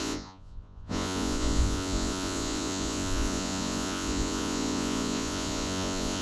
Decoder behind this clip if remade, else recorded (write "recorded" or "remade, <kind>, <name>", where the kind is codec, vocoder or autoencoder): remade, vocoder, Vocos